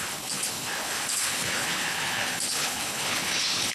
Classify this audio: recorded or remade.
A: remade